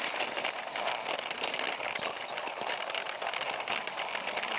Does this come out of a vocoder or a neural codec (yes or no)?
no